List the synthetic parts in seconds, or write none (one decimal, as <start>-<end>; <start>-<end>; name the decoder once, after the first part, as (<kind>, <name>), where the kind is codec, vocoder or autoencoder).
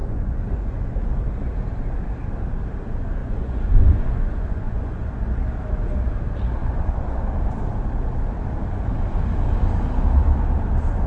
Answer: 0.0-0.9 (vocoder, Vocos); 3.2-5.4; 6.6-7.2